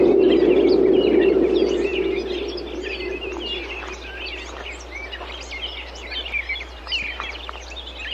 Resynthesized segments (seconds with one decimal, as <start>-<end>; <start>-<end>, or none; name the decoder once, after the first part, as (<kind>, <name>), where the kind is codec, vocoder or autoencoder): none